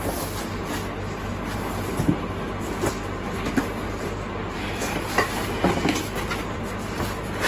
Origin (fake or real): real